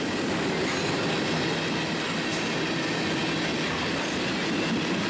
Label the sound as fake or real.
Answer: real